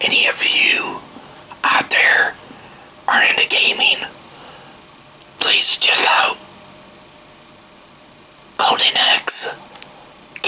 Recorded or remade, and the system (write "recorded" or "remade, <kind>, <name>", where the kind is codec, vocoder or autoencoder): recorded